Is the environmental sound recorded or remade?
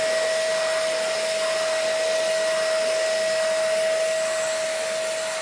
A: recorded